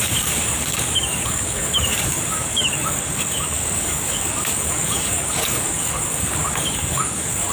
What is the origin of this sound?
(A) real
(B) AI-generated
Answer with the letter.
B